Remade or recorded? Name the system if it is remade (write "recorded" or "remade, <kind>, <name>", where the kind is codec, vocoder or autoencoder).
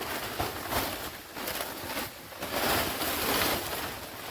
recorded